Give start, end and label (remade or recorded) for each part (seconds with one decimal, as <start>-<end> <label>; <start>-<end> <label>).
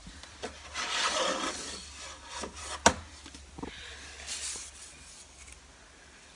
0.0-2.6 remade; 2.6-6.4 recorded